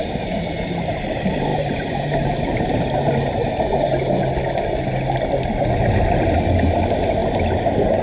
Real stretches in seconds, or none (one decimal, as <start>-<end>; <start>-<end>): 3.9-6.6; 7.2-8.0

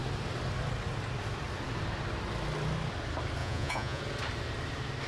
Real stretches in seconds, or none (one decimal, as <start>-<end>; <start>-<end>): 0.0-3.4; 4.0-5.1

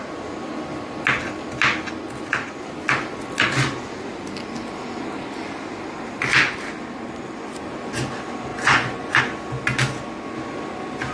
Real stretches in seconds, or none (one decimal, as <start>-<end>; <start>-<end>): 0.0-8.5; 9.2-11.1

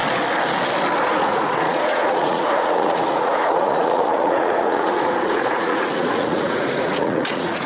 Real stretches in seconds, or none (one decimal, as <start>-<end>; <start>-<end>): 0.0-1.1

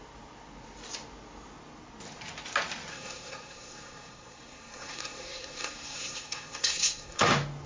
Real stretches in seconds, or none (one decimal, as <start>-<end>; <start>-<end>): 0.0-2.9; 7.3-7.7

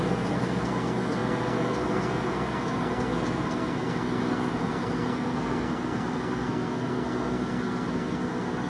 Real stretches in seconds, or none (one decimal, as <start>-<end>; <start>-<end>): none

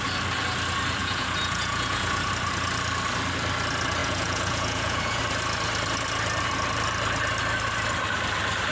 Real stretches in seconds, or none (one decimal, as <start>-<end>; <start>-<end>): 0.0-1.0; 2.3-4.0; 5.2-8.7